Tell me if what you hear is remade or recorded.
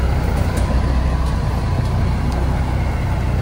recorded